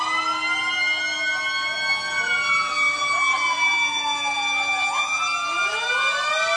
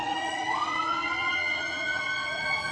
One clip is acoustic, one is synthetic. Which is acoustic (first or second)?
first